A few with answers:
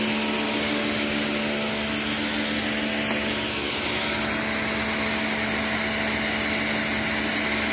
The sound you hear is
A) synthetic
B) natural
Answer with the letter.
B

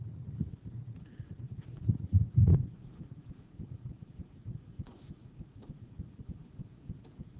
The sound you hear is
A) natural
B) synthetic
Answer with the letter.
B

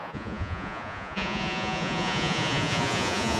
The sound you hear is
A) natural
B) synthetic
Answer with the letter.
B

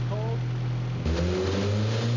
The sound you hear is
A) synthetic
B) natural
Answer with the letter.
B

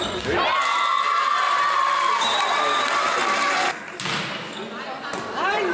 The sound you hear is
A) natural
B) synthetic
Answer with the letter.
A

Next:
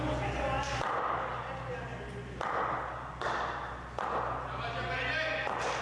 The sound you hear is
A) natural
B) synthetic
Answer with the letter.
A